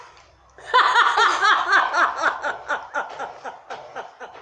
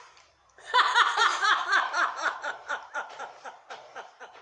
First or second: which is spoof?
second